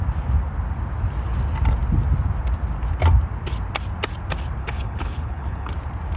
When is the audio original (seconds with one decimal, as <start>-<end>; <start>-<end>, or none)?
0.0-4.6; 5.7-6.2

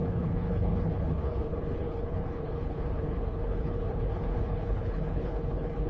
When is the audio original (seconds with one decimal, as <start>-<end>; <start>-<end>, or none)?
none

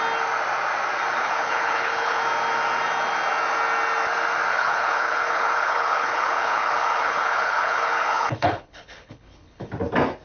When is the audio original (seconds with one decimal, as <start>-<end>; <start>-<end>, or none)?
0.0-1.2; 2.2-4.5; 9.7-10.2

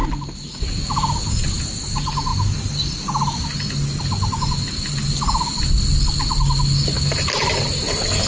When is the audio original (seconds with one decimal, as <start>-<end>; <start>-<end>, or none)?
0.0-8.3

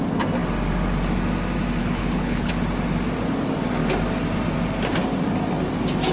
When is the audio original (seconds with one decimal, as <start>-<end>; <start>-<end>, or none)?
0.0-1.8; 2.5-6.1

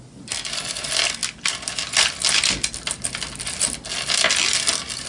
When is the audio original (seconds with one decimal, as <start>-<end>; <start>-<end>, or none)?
0.0-5.1